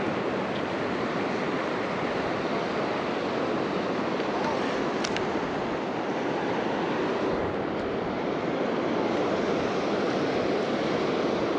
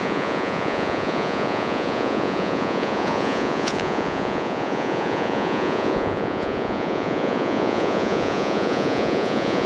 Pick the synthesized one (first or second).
second